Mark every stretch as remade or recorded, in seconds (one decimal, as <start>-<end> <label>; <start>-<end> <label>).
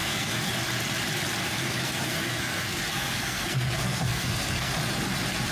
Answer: 0.0-0.5 remade; 0.5-1.4 recorded; 1.4-4.7 remade; 4.7-5.5 recorded